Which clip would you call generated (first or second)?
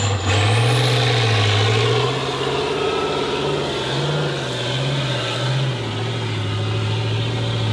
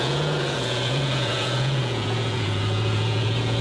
second